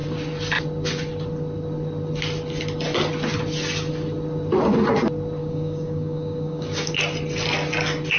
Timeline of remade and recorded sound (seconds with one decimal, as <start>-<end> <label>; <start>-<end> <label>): 0.0-5.4 recorded; 5.4-6.9 remade; 6.9-8.2 recorded